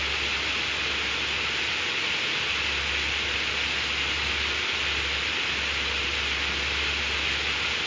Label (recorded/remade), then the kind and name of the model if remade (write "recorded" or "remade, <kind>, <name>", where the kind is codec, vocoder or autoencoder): recorded